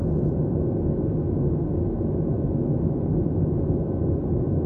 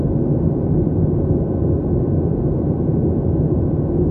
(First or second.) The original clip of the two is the second